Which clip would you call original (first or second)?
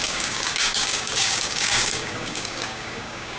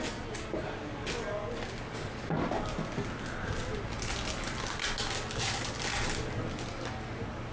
second